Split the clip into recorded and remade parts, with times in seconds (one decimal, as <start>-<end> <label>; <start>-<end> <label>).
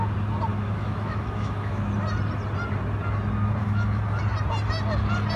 0.0-0.5 recorded; 0.5-1.9 remade; 1.9-3.6 recorded; 3.6-4.2 remade; 4.2-5.4 recorded